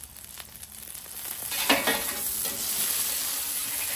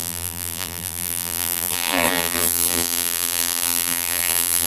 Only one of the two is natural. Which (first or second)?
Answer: first